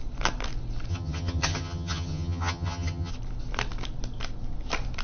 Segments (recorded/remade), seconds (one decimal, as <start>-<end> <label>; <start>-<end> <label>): 0.0-0.9 recorded; 0.9-3.1 remade; 3.1-5.0 recorded